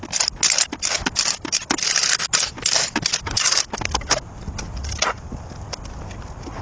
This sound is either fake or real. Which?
real